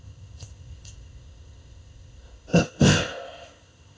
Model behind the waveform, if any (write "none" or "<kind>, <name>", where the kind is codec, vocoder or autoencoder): codec, ZipCodec